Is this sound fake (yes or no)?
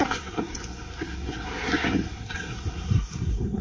yes